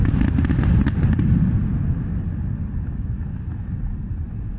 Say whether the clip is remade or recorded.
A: recorded